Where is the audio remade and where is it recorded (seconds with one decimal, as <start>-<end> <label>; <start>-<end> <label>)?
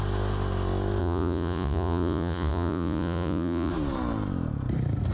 0.0-1.0 recorded; 1.0-3.7 remade; 3.7-5.1 recorded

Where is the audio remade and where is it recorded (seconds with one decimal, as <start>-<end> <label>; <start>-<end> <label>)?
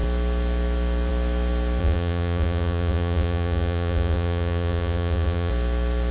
0.0-1.8 recorded; 1.8-5.5 remade; 5.5-6.1 recorded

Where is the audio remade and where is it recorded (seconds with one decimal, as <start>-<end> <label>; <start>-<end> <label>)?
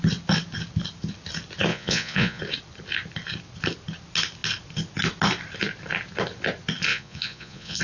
0.0-1.7 recorded; 1.7-2.4 remade; 2.4-6.9 recorded; 6.9-7.8 remade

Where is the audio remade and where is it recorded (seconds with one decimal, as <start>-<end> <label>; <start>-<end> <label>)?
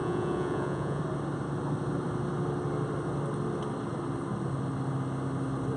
0.0-1.0 remade; 1.0-5.8 recorded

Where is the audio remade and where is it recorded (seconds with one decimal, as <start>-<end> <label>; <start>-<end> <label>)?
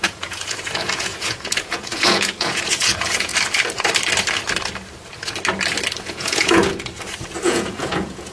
0.0-3.3 remade; 3.3-6.0 recorded; 6.0-6.6 remade; 6.6-7.4 recorded; 7.4-8.3 remade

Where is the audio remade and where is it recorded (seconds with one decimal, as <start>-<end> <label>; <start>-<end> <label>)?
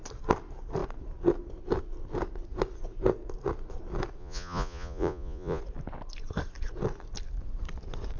0.0-4.2 recorded; 4.2-5.6 remade; 5.6-8.2 recorded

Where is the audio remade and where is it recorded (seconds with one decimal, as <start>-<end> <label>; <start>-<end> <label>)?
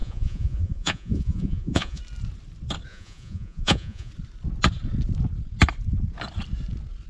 0.0-2.0 remade; 2.0-2.9 recorded; 2.9-4.1 remade; 4.1-7.1 recorded